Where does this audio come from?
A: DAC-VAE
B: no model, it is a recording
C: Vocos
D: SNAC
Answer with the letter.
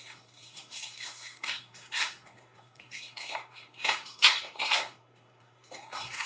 D